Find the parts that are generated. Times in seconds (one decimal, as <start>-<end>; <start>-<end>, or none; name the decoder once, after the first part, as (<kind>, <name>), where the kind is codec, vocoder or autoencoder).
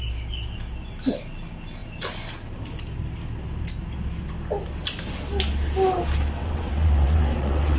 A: 6.4-7.8 (vocoder, WaveNeXt)